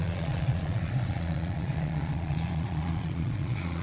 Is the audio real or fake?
fake